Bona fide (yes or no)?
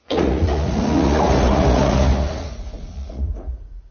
no